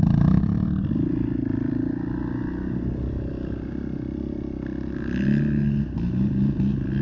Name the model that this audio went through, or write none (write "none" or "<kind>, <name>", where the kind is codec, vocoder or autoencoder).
none